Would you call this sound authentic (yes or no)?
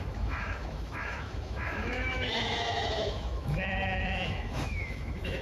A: no